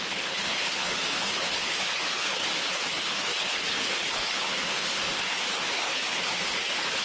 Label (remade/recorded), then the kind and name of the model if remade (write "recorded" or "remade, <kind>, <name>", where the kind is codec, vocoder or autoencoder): remade, codec, HILCodec